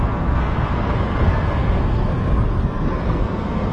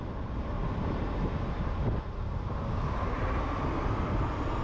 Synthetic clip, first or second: first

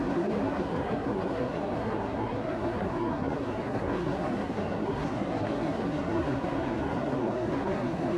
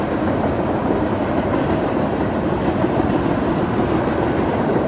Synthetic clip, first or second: first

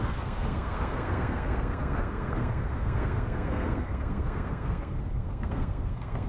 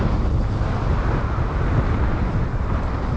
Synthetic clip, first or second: first